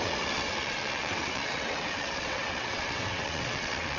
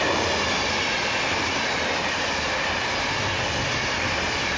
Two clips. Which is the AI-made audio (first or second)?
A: first